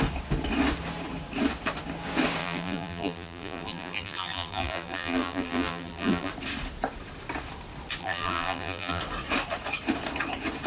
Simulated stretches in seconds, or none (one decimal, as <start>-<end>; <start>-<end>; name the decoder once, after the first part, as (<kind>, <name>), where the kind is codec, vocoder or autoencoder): 2.4-6.3 (vocoder, BigVGAN v2); 8.0-9.0